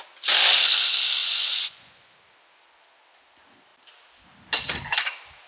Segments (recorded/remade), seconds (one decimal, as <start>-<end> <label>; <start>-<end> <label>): 0.0-1.2 recorded; 1.2-2.1 remade; 2.1-5.5 recorded

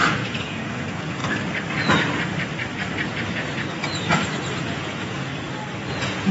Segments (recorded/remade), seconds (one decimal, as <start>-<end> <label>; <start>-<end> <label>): 0.0-1.2 remade; 1.2-4.6 recorded; 4.6-5.3 remade; 5.3-5.8 recorded; 5.8-6.3 remade

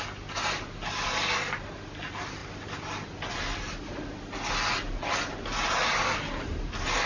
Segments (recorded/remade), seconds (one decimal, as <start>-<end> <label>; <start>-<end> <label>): 0.0-7.1 recorded

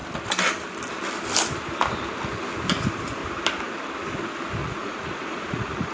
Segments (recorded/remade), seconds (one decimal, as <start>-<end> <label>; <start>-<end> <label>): 0.0-4.6 recorded; 4.6-5.9 remade

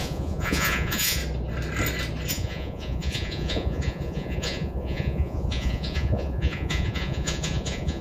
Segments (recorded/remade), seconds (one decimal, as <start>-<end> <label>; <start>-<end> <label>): 0.0-1.2 remade; 1.2-2.3 recorded; 2.3-8.0 remade

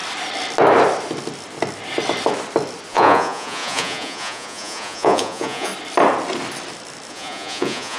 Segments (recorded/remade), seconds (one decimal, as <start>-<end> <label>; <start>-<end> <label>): 0.0-2.9 recorded; 2.9-5.7 remade; 5.7-7.1 recorded; 7.1-8.0 remade